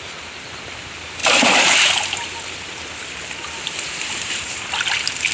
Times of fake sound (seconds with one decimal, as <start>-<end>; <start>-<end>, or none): none